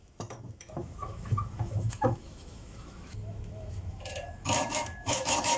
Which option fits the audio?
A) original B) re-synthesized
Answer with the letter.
B